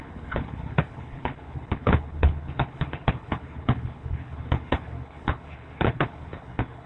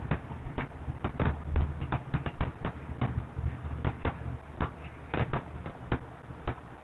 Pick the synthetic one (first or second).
first